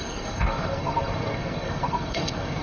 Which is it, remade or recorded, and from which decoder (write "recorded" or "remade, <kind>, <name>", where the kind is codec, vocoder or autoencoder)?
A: remade, codec, SNAC